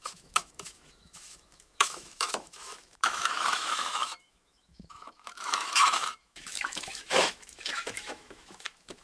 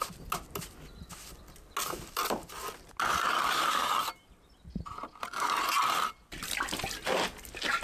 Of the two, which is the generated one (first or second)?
first